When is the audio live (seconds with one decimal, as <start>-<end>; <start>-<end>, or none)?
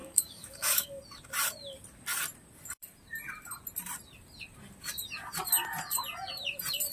1.0-6.9